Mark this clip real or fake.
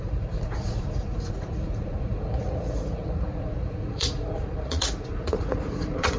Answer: fake